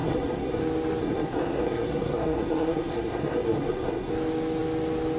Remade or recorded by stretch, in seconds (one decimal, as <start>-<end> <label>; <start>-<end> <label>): 0.0-0.6 remade; 0.6-1.0 recorded; 1.0-4.1 remade; 4.1-5.2 recorded